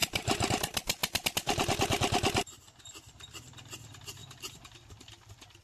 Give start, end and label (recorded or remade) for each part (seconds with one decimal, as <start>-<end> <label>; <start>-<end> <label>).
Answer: 0.0-0.5 remade; 0.5-4.2 recorded; 4.2-5.6 remade